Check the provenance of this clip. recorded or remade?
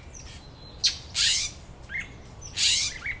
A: recorded